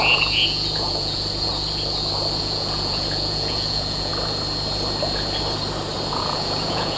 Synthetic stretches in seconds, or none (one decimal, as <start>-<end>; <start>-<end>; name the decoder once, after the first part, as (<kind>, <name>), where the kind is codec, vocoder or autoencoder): 0.0-1.5 (vocoder, Vocos); 2.4-4.1; 6.2-7.0